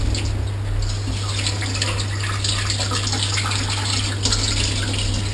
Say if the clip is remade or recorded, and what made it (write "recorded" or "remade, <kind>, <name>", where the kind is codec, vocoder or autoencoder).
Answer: recorded